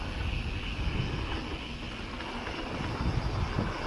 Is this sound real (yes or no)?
yes